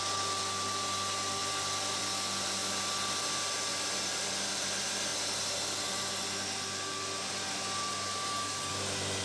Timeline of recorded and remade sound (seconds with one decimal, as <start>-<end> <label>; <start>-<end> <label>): 0.0-9.2 recorded